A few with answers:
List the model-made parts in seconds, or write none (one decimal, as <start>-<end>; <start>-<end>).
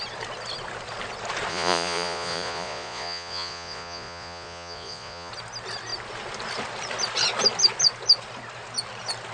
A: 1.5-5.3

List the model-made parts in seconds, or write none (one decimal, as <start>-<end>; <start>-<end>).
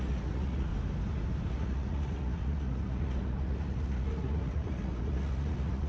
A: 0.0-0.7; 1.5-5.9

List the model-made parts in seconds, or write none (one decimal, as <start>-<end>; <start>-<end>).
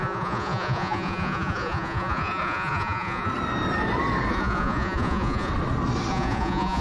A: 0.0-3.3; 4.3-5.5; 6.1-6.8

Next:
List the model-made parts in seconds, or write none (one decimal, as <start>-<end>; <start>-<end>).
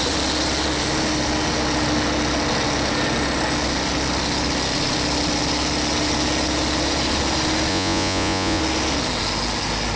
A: 7.7-8.6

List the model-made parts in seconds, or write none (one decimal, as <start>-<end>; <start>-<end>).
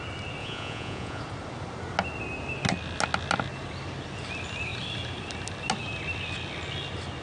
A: 0.4-1.2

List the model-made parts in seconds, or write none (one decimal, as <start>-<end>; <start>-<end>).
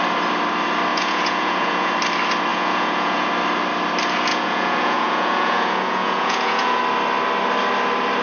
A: 0.9-1.9; 2.5-3.3; 4.3-6.8